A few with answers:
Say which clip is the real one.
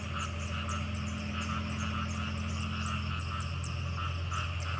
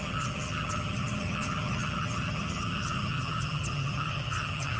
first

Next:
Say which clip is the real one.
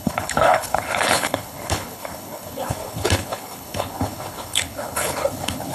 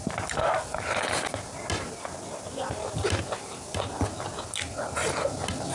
second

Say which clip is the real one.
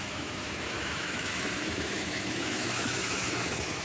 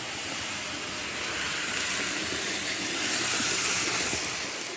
second